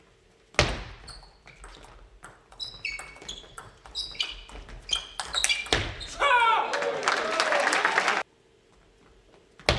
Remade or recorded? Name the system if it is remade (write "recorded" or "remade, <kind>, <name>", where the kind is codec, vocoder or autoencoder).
recorded